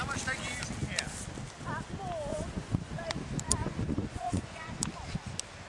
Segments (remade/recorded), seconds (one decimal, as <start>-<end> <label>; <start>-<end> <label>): 0.0-2.3 recorded; 2.3-3.0 remade; 3.0-3.6 recorded; 3.6-4.8 remade; 4.8-5.7 recorded